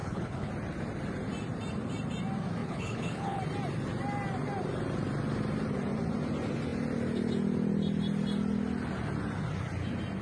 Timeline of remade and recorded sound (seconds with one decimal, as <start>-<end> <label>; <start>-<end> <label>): 0.0-0.5 remade; 0.5-2.6 recorded; 2.6-3.4 remade; 3.4-10.2 recorded